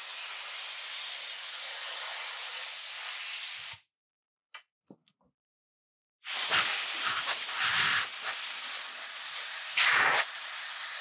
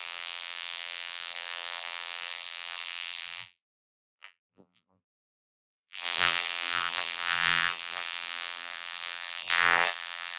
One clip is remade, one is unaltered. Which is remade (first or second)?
second